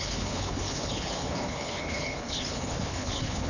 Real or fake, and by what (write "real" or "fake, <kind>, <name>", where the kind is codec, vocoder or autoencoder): fake, codec, HILCodec